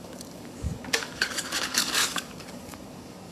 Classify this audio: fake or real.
fake